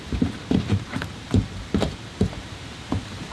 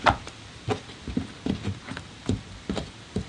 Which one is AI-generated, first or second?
first